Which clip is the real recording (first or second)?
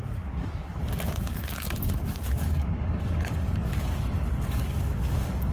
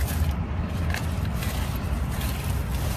second